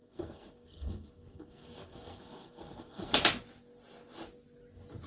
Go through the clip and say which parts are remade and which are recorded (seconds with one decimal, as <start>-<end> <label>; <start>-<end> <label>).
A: 0.0-3.1 remade; 3.1-5.1 recorded